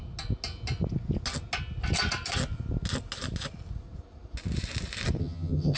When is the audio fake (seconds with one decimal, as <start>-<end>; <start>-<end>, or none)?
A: 5.2-5.8